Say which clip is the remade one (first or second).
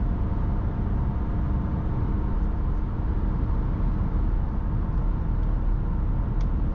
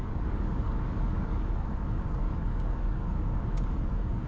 second